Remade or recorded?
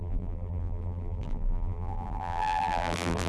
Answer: remade